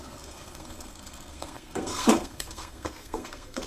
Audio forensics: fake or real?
fake